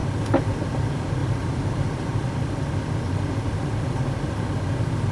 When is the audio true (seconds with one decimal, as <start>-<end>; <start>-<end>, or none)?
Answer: 0.0-1.2; 2.5-5.1